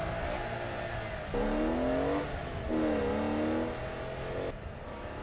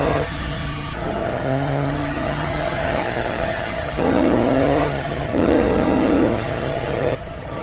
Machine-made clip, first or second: second